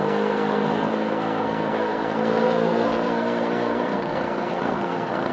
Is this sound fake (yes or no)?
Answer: yes